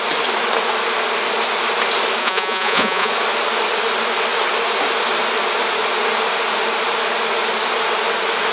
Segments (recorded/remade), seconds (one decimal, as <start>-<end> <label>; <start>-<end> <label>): 0.0-2.2 recorded; 2.2-3.1 remade; 3.1-8.5 recorded